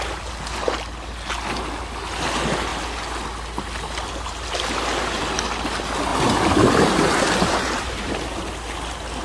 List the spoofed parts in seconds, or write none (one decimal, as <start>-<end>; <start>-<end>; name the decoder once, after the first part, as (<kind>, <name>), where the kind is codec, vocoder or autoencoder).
6.1-8.1 (vocoder, BigVGAN v2)